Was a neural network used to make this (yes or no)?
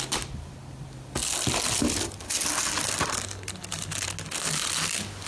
no